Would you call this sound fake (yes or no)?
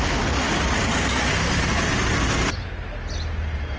no